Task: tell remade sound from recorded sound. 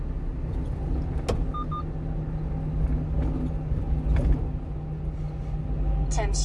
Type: recorded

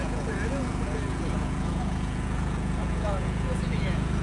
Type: remade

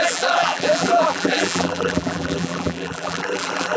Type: remade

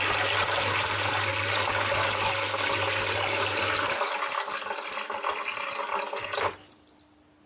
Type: recorded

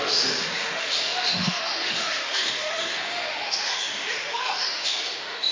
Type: remade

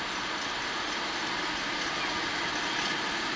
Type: recorded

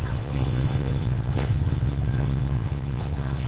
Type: remade